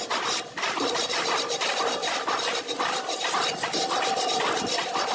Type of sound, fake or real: real